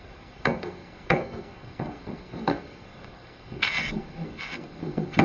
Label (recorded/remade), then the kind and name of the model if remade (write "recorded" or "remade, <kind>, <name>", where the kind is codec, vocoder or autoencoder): remade, codec, SNAC